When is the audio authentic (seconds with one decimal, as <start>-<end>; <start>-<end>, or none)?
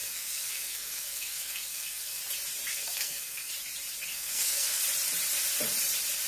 2.2-2.7; 3.5-4.1; 4.8-6.3